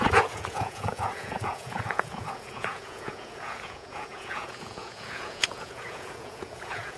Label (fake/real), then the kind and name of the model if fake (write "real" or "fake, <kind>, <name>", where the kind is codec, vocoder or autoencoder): fake, vocoder, Vocos